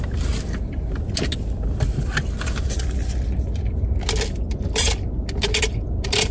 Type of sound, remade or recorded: recorded